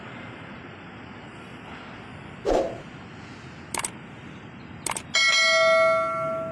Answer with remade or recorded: recorded